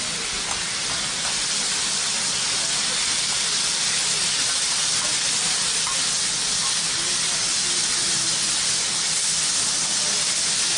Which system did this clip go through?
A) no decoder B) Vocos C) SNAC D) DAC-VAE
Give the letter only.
A